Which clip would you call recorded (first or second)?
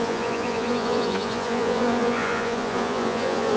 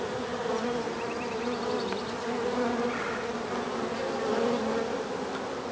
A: second